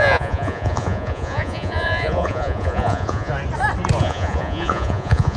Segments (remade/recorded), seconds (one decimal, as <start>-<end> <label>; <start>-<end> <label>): 0.0-3.3 remade; 3.3-4.0 recorded; 4.0-5.4 remade